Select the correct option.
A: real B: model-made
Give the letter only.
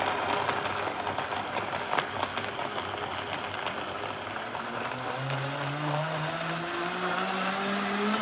A